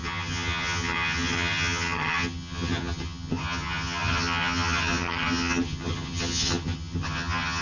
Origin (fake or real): fake